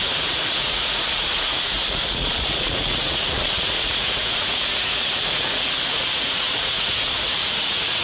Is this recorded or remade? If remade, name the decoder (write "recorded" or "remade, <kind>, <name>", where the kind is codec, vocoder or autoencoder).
remade, vocoder, Vocos